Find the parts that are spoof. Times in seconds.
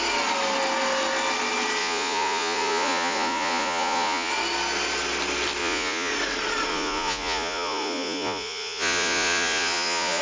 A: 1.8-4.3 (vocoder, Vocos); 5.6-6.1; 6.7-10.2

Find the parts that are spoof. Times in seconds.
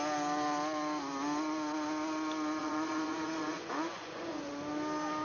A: 2.6-4.5 (vocoder, Vocos)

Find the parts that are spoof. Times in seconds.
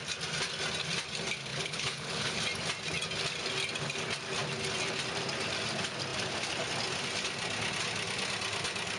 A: 1.5-2.4 (codec, HILCodec)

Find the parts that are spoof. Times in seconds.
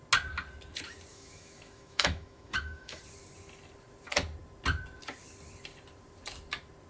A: 1.1-3.0 (autoencoder, DAC-VAE)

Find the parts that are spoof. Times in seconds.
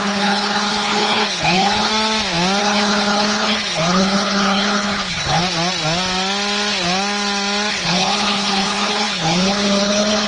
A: 0.0-1.9 (codec, HILCodec); 2.6-5.4; 7.7-10.3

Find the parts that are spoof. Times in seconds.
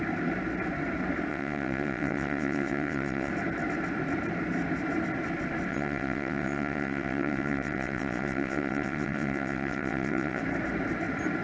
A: 1.3-3.3 (vocoder, WaveNeXt); 5.7-10.4